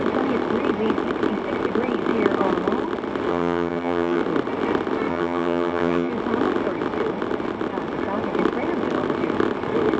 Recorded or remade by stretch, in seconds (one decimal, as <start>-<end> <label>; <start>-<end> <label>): 0.0-3.3 recorded; 3.3-4.2 remade; 4.2-5.1 recorded; 5.1-6.1 remade; 6.1-10.0 recorded